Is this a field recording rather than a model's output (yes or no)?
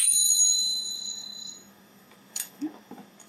no